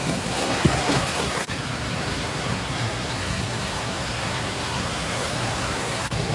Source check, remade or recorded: remade